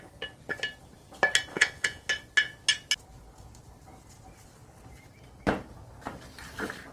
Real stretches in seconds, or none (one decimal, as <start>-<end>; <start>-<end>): 0.0-1.5; 2.1-6.9